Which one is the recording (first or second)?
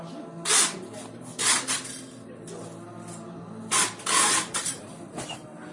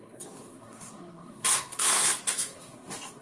first